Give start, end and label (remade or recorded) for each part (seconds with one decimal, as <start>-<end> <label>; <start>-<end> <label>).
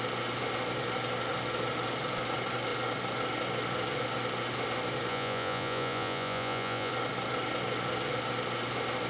0.0-5.1 recorded; 5.1-6.9 remade; 6.9-9.1 recorded